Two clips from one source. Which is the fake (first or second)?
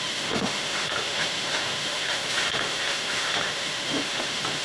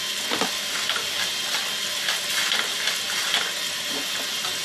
first